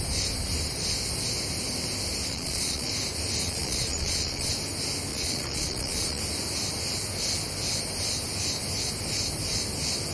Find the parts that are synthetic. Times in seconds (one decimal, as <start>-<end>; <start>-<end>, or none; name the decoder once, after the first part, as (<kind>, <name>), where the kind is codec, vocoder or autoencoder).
2.3-2.9 (vocoder, Vocos); 3.4-4.5; 5.1-6.2